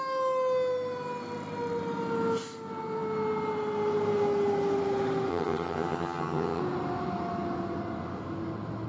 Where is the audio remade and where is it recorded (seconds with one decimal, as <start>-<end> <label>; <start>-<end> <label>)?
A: 0.0-5.3 recorded; 5.3-6.6 remade; 6.6-8.9 recorded

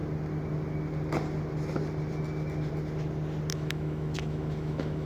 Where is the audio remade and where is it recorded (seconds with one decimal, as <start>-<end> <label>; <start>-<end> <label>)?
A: 0.0-3.5 recorded; 3.5-5.1 remade

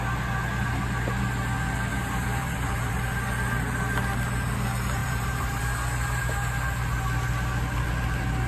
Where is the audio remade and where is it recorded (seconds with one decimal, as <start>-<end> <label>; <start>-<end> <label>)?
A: 0.0-1.9 recorded; 1.9-2.9 remade; 2.9-5.0 recorded; 5.0-5.6 remade; 5.6-8.5 recorded

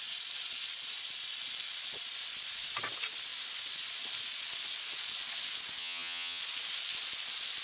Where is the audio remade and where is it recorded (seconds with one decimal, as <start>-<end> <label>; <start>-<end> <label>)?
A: 0.0-5.8 recorded; 5.8-6.4 remade; 6.4-7.6 recorded

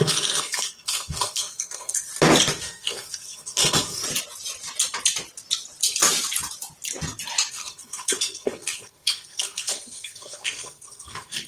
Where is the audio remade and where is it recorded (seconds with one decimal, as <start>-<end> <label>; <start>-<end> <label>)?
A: 0.0-2.1 remade; 2.1-2.6 recorded; 2.6-4.0 remade; 4.0-7.5 recorded; 7.5-11.5 remade

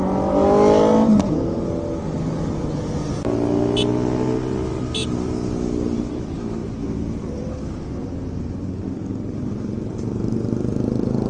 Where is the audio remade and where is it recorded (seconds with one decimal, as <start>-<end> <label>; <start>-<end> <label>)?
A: 0.0-6.6 recorded; 6.6-7.5 remade; 7.5-11.3 recorded

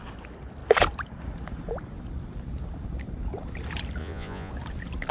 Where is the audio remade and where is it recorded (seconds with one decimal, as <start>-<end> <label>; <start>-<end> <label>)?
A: 0.0-4.0 recorded; 4.0-4.5 remade; 4.5-5.1 recorded